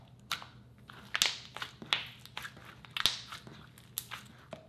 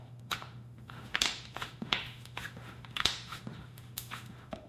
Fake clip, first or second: second